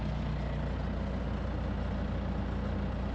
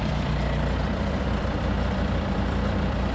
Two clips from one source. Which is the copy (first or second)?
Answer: second